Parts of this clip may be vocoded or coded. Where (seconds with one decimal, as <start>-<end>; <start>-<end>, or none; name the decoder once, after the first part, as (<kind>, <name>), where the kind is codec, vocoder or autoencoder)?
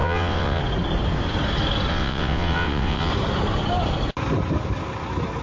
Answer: 0.0-0.6 (vocoder, WaveNeXt); 1.9-3.1